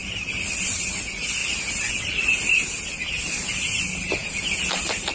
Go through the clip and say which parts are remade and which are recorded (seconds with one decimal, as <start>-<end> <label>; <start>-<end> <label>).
0.0-5.1 recorded